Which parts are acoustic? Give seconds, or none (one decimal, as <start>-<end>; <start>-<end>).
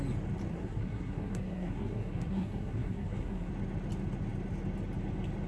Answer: 0.0-0.5; 3.5-5.5